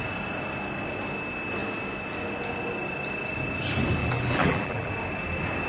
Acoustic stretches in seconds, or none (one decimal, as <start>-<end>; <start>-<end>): 0.0-4.0; 4.9-5.7